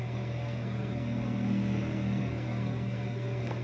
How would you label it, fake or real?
fake